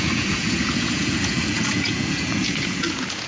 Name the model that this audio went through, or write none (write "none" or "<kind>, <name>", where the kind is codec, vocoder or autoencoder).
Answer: vocoder, Vocos